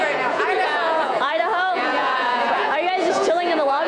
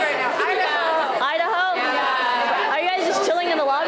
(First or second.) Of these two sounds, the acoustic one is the second